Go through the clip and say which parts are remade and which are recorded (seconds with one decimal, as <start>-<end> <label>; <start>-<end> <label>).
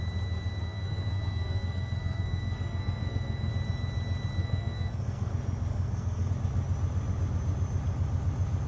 0.0-0.6 recorded; 0.6-3.5 remade; 3.5-4.4 recorded; 4.4-5.3 remade; 5.3-5.7 recorded; 5.7-6.3 remade; 6.3-8.7 recorded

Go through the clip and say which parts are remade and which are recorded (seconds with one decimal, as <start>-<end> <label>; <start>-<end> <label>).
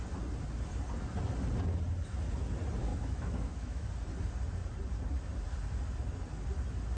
0.0-2.9 recorded; 2.9-3.9 remade; 3.9-7.0 recorded